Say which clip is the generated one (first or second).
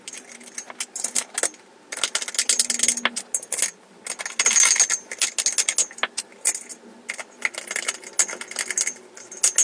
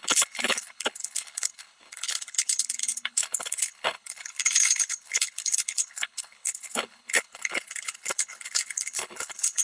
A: second